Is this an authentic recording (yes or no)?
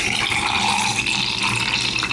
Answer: yes